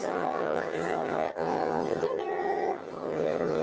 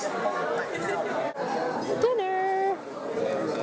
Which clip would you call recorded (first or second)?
second